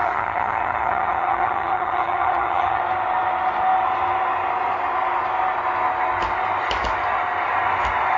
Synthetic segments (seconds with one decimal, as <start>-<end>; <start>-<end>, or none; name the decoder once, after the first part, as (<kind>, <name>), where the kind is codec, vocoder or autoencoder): 0.0-2.8 (vocoder, HiFi-GAN)